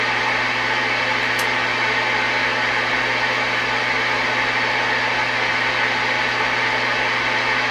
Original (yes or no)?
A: yes